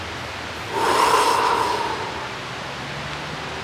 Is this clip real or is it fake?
real